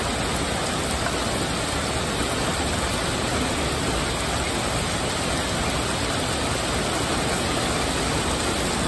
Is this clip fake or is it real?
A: real